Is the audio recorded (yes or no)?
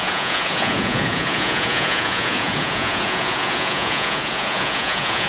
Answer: no